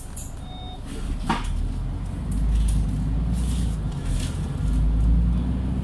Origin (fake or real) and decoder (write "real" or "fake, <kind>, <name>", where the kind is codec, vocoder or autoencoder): real